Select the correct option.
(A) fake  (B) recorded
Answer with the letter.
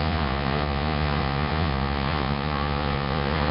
A